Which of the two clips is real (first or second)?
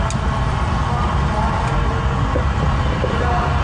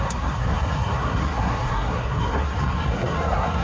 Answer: first